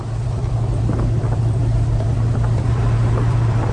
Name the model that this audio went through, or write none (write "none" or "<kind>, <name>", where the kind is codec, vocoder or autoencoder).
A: vocoder, BigVGAN v2